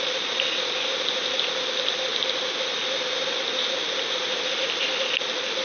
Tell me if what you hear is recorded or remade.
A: recorded